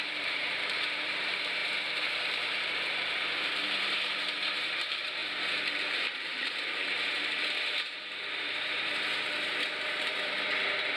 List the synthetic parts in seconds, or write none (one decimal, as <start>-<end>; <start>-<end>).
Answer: 0.0-11.0

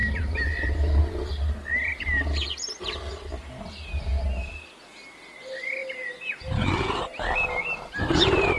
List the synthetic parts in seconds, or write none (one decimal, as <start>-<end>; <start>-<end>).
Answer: none